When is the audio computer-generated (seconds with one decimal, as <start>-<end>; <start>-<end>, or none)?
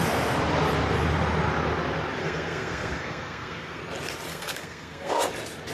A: 2.2-3.8; 4.3-5.3